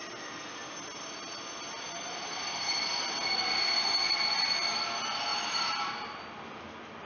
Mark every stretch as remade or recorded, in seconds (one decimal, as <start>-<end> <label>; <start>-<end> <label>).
0.0-5.3 recorded; 5.3-5.9 remade; 5.9-7.1 recorded